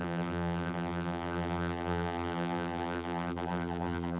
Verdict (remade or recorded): remade